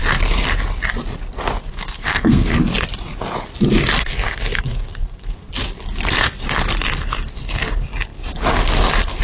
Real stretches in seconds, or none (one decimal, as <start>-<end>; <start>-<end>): 0.0-1.7; 2.6-3.9; 5.5-9.2

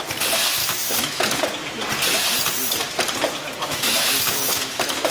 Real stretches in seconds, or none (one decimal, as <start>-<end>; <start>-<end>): 0.0-0.6; 1.4-3.6

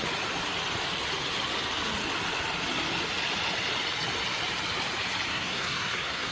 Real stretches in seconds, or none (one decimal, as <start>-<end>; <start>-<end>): 0.0-5.3

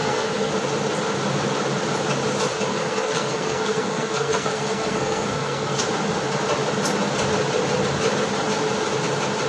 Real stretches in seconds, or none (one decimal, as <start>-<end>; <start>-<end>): 0.5-2.7; 5.8-9.5

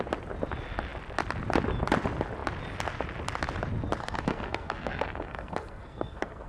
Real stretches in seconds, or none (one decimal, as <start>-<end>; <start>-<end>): 0.0-4.0

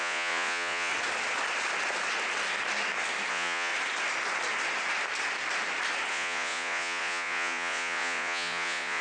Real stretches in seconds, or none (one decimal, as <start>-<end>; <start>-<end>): 0.9-3.3; 3.7-6.1